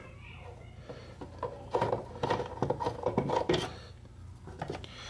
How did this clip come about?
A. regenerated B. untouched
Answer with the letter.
B